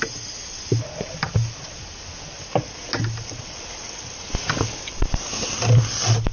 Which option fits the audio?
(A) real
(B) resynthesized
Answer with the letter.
A